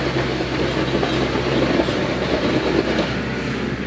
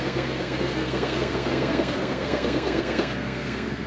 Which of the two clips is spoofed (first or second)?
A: second